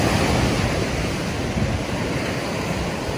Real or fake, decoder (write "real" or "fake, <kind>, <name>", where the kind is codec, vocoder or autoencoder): real